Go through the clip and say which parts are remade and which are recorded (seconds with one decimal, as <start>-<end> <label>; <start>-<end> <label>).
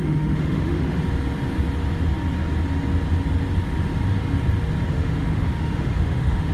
0.0-1.0 remade; 1.0-4.9 recorded; 4.9-6.5 remade